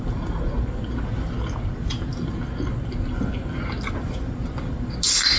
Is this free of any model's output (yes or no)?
yes